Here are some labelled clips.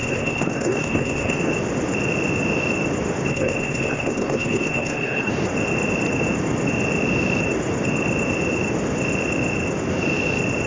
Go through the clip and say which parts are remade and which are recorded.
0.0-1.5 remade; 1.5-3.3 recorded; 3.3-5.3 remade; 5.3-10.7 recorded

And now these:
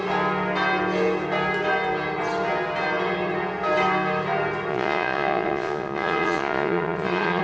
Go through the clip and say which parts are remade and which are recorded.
0.0-4.7 recorded; 4.7-7.4 remade

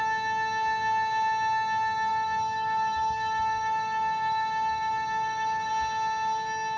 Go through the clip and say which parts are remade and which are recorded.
0.0-2.1 recorded; 2.1-5.7 remade; 5.7-6.8 recorded

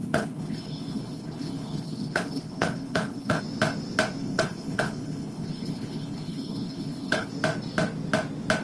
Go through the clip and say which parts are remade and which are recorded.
0.0-3.4 remade; 3.4-4.2 recorded; 4.2-7.3 remade; 7.3-8.6 recorded